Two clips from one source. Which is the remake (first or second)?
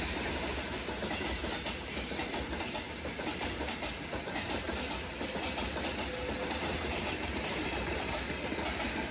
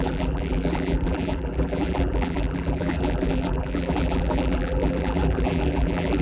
second